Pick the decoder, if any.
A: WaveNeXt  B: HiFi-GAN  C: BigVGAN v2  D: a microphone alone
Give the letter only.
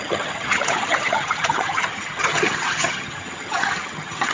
B